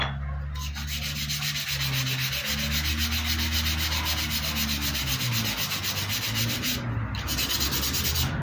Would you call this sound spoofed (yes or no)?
no